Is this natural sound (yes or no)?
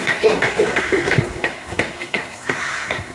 no